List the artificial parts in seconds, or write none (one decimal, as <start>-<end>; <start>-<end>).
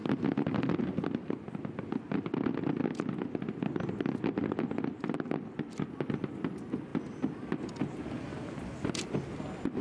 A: none